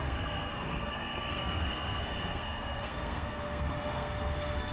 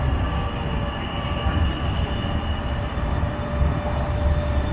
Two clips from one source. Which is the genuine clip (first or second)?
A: second